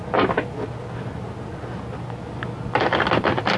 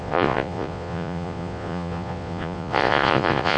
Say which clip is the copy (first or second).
second